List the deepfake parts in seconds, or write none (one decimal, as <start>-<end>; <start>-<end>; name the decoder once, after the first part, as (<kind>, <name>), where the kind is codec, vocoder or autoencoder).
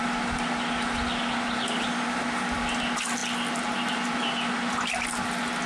none